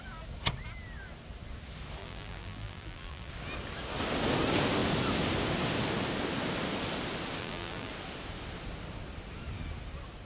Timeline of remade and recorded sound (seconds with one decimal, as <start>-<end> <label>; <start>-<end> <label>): 0.0-2.0 recorded; 2.0-3.3 remade; 3.3-7.4 recorded; 7.4-7.9 remade; 7.9-10.2 recorded